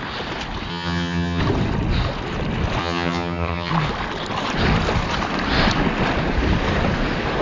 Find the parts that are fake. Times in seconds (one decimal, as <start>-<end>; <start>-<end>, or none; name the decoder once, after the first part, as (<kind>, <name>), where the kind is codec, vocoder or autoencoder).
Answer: 0.7-1.4 (vocoder, HiFi-GAN); 2.8-3.7